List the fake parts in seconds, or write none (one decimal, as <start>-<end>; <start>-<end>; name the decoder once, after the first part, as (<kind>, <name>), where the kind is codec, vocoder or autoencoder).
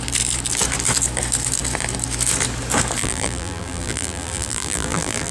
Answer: 3.0-5.3 (vocoder, BigVGAN v2)